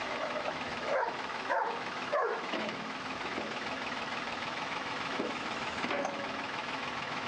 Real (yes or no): no